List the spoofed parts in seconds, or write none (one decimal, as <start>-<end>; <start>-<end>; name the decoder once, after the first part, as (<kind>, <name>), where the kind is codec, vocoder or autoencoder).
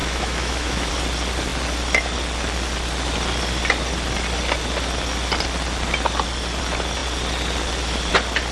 0.0-0.9 (autoencoder, DAC-VAE)